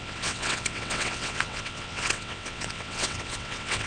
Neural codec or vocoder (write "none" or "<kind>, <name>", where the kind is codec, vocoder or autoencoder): vocoder, WaveNeXt